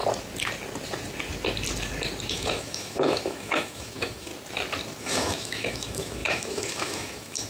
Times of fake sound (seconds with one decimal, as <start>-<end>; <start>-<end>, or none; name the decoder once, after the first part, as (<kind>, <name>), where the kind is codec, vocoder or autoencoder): 2.3-4.3 (autoencoder, DAC-VAE); 5.0-7.5